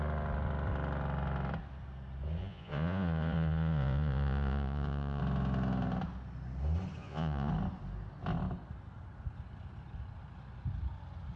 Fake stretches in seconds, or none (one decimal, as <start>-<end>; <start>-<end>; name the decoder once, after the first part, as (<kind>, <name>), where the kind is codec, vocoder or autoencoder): 2.4-5.2 (vocoder, Vocos); 7.0-7.5